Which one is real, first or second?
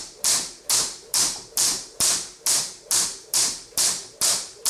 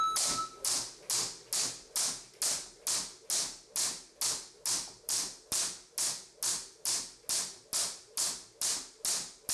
second